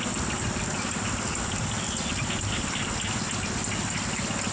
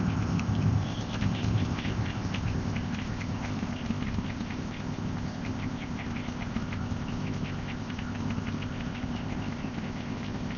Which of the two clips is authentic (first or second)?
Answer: first